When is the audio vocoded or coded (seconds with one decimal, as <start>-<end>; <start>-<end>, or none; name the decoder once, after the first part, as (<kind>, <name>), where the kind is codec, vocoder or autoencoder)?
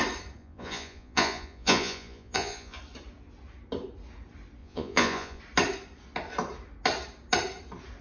0.4-2.8 (vocoder, Vocos); 4.6-5.4